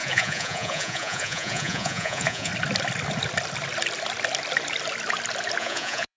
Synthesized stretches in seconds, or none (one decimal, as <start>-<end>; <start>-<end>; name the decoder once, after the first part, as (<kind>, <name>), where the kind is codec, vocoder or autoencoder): 0.0-2.5 (vocoder, Vocos); 5.6-6.2